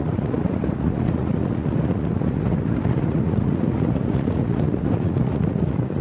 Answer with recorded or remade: remade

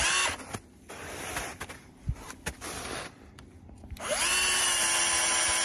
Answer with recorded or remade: recorded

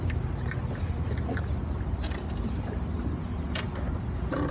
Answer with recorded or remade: recorded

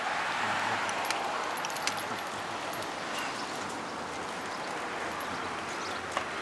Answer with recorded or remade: recorded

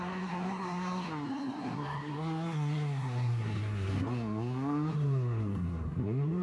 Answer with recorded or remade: remade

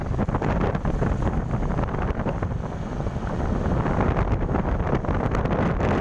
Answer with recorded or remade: recorded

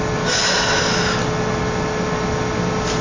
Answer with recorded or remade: recorded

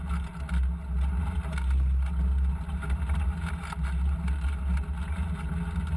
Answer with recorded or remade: recorded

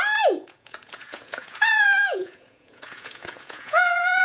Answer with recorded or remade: remade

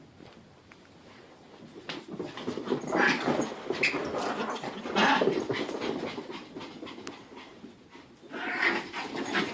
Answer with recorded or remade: recorded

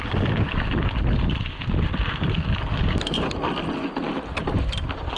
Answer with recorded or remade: recorded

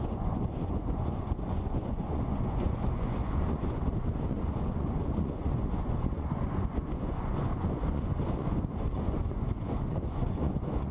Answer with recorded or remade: remade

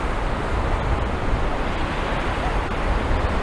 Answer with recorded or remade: recorded